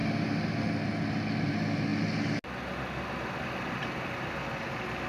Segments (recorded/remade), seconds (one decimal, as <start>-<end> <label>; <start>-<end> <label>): 0.0-5.1 recorded